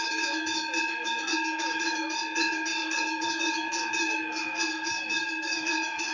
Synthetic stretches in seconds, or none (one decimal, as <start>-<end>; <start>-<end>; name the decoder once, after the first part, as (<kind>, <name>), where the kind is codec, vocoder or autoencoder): 0.0-6.1 (autoencoder, DAC-VAE)